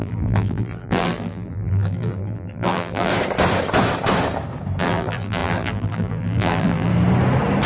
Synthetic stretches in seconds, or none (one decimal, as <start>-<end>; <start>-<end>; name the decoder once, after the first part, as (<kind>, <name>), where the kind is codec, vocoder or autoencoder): 0.0-3.1 (vocoder, BigVGAN v2); 4.8-6.9